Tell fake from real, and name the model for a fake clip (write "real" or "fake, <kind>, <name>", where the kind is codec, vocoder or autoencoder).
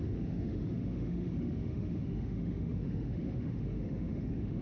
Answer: fake, autoencoder, DAC-VAE